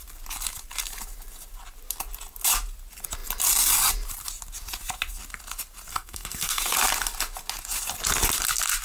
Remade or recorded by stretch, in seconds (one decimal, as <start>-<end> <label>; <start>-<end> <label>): 0.0-5.9 recorded; 5.9-6.6 remade; 6.6-8.8 recorded